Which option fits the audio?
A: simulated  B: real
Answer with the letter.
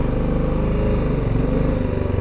B